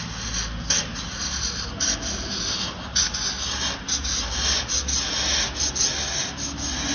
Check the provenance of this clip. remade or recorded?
recorded